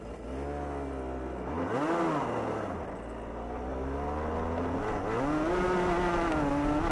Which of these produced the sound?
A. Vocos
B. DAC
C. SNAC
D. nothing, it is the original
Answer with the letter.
D